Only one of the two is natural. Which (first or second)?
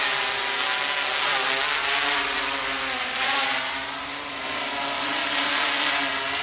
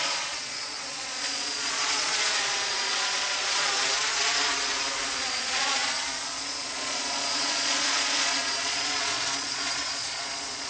first